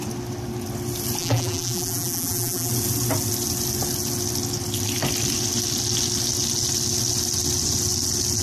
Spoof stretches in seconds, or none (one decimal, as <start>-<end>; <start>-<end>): 1.2-2.7